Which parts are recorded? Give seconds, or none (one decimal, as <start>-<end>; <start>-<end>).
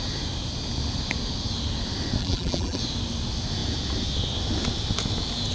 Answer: 0.0-2.2; 2.8-5.5